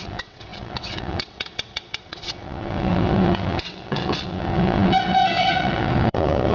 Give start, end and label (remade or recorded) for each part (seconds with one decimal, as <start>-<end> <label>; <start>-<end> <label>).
0.0-6.5 remade